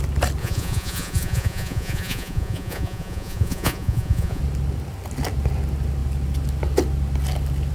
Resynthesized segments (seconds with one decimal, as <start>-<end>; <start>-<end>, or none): 0.4-4.4